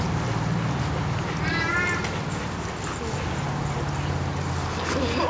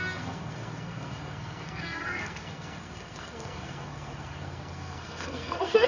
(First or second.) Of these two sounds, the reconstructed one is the second